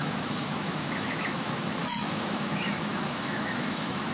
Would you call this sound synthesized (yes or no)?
yes